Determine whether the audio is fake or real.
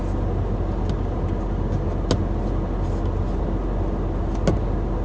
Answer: real